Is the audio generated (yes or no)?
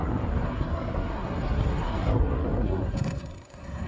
yes